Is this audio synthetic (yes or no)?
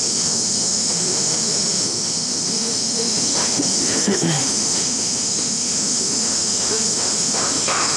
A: yes